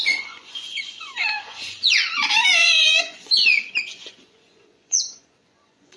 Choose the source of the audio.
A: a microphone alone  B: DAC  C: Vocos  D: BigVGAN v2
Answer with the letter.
C